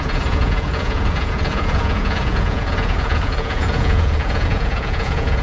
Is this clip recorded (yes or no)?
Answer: no